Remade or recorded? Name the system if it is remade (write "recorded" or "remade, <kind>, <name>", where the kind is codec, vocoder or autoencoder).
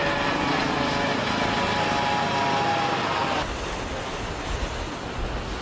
recorded